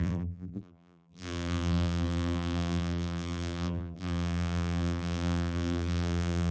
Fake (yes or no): yes